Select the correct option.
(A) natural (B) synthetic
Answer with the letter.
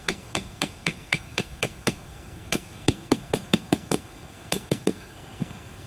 B